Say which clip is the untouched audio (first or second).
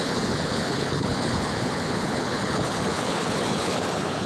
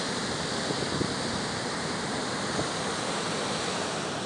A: second